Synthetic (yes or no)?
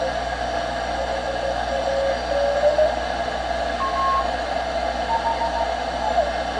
no